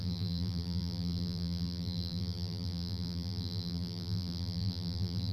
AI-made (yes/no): yes